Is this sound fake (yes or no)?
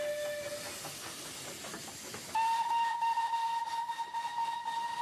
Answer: no